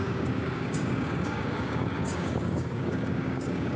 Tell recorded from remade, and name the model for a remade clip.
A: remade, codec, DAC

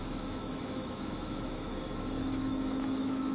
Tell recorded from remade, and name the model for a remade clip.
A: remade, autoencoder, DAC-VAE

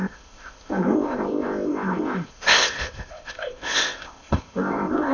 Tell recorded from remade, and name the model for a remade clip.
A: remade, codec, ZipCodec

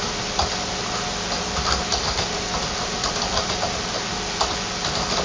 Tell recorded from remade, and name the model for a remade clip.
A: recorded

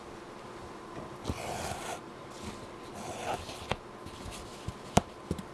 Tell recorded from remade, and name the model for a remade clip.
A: recorded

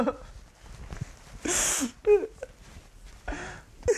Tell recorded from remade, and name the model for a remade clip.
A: recorded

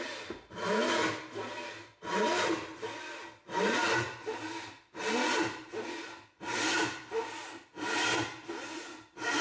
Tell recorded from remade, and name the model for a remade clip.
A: recorded